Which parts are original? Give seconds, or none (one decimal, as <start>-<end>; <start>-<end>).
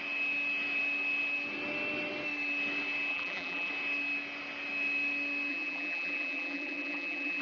0.0-3.1; 3.7-5.5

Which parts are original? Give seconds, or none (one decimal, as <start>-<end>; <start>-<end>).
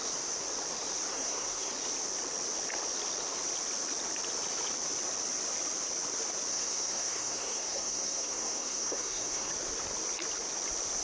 0.0-1.1; 1.7-6.5; 9.5-11.0